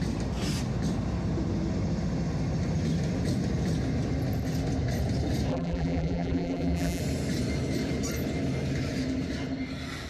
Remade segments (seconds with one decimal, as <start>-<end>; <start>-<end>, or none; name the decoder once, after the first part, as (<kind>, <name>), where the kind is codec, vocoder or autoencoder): 5.5-7.0 (vocoder, BigVGAN v2)